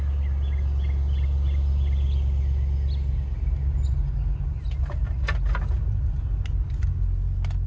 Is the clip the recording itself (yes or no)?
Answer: yes